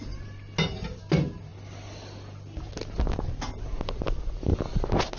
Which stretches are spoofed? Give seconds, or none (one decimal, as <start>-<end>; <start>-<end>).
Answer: none